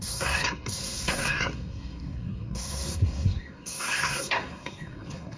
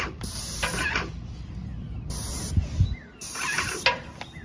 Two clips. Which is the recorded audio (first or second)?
second